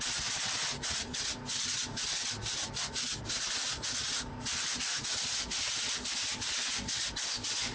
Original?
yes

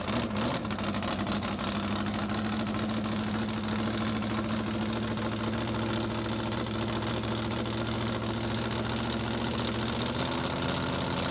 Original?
yes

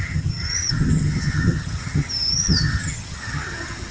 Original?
no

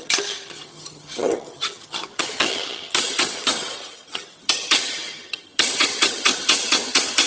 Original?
no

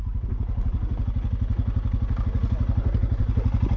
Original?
yes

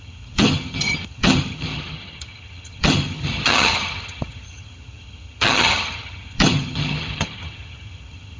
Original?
no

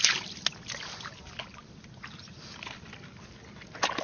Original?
yes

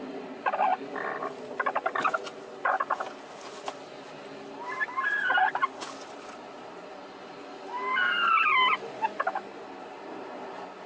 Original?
yes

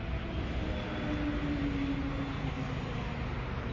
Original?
yes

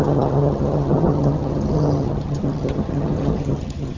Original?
no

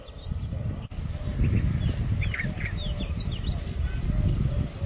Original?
yes